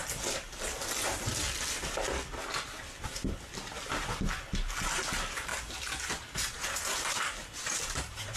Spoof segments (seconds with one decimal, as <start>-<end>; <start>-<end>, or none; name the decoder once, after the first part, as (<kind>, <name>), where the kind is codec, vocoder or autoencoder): 5.0-8.4 (vocoder, BigVGAN v2)